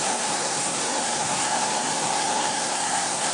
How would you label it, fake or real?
fake